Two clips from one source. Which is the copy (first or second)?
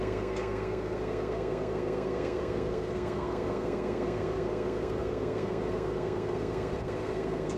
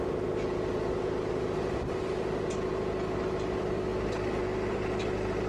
first